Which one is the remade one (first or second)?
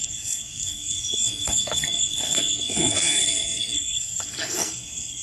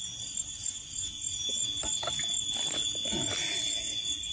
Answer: first